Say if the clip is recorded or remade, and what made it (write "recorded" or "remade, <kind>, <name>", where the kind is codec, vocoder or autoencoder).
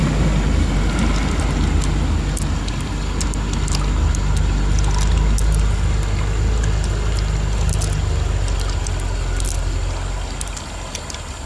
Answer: recorded